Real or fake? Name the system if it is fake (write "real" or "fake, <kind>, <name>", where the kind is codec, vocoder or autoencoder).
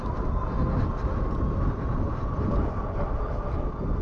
real